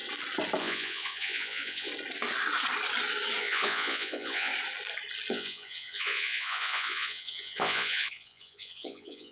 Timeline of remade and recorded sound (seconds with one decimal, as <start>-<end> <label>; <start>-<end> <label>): 0.0-0.6 recorded; 0.6-1.9 remade; 1.9-3.4 recorded; 3.4-4.5 remade; 4.5-5.3 recorded; 5.3-9.3 remade

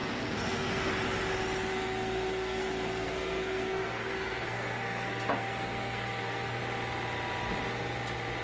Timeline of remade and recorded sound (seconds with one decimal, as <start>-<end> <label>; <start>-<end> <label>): 0.0-0.9 remade; 0.9-1.7 recorded; 1.7-6.6 remade; 6.6-8.4 recorded

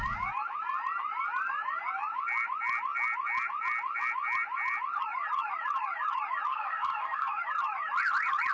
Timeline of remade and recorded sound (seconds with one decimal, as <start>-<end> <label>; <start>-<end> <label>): 0.0-6.5 recorded; 6.5-7.4 remade; 7.4-8.5 recorded

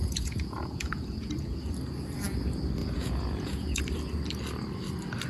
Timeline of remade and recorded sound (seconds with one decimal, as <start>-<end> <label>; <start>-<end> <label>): 0.0-1.7 remade; 1.7-2.8 recorded; 2.8-3.8 remade; 3.8-5.3 recorded